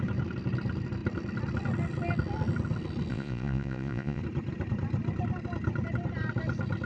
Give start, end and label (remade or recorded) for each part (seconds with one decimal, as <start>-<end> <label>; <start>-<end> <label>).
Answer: 0.0-3.1 recorded; 3.1-4.2 remade; 4.2-6.8 recorded